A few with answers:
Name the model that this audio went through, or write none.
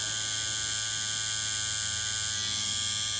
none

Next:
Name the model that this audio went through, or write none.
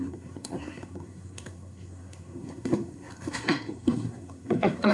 codec, SNAC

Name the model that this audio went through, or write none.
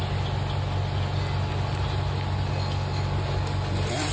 none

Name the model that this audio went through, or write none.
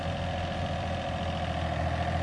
none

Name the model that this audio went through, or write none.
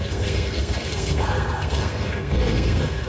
codec, SNAC